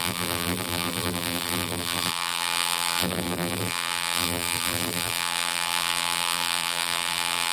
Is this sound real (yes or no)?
no